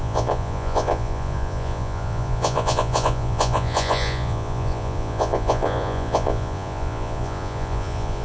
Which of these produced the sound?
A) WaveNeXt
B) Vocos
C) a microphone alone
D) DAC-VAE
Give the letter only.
B